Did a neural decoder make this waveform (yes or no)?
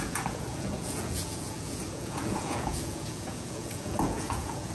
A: yes